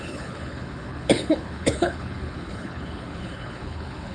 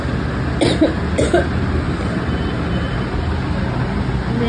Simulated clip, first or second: first